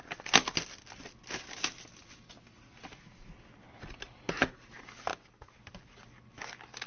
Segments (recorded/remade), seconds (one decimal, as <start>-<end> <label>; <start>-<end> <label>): 0.0-6.9 recorded